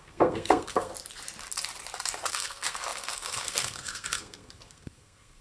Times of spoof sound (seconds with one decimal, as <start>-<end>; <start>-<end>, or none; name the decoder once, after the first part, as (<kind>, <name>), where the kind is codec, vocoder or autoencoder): 0.0-0.9 (codec, SNAC); 2.3-5.4